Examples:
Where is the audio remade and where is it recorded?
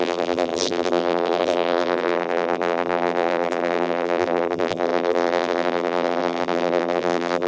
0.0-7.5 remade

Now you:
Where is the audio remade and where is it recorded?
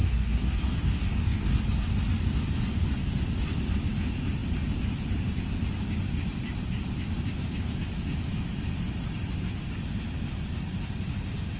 0.0-1.6 remade; 1.6-11.6 recorded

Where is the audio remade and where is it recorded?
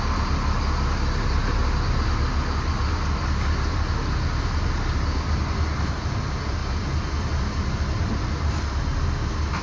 0.0-9.6 recorded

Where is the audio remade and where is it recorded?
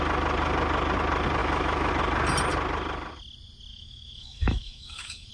0.0-1.4 recorded; 1.4-1.9 remade; 1.9-3.7 recorded; 3.7-5.3 remade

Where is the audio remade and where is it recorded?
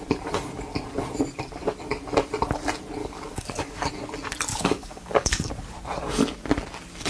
0.0-3.0 recorded; 3.0-3.9 remade; 3.9-4.5 recorded; 4.5-5.5 remade; 5.5-7.1 recorded